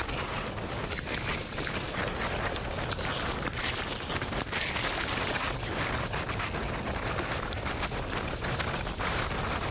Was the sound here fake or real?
real